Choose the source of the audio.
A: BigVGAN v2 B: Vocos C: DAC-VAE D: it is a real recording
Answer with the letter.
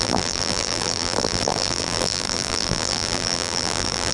A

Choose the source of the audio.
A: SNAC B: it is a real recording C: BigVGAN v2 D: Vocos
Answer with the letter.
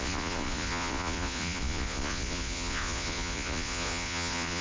D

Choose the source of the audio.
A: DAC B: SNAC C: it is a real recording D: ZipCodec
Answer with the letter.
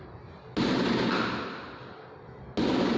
C